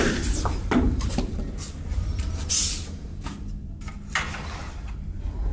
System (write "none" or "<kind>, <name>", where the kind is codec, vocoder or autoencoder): none